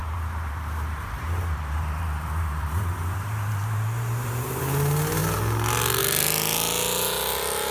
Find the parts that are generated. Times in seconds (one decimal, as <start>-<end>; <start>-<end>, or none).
0.0-4.6

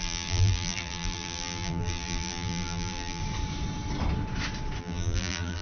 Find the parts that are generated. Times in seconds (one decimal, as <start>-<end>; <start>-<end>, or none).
0.0-3.2; 4.8-5.6

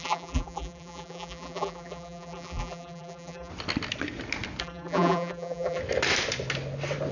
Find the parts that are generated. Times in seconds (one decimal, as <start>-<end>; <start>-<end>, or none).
0.0-3.5; 4.6-5.8